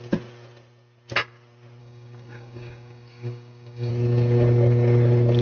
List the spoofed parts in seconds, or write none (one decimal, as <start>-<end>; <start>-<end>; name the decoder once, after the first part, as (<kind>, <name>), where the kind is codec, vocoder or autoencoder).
1.8-3.9 (codec, DAC)